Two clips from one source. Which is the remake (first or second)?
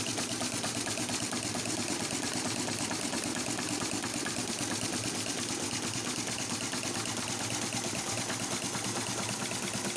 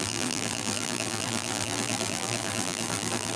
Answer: second